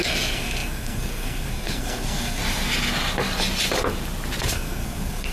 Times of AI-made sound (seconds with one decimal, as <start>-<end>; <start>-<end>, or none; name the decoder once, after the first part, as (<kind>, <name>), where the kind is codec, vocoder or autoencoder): 0.0-2.4 (codec, SNAC); 4.4-5.3